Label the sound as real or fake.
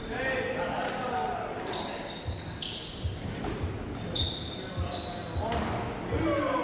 real